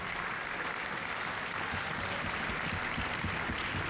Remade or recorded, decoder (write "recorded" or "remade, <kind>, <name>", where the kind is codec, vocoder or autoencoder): recorded